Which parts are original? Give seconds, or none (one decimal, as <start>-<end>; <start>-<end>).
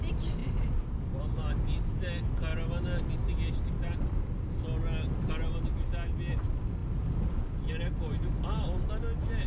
0.0-9.5